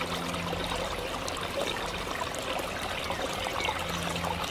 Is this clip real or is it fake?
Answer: real